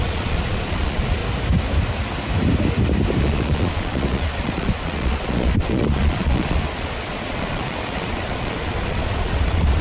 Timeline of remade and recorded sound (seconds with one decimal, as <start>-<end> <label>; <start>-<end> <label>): 0.0-1.2 remade; 1.2-3.2 recorded; 3.2-9.8 remade